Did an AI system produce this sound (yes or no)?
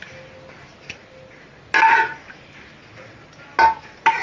no